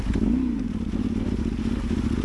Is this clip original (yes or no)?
yes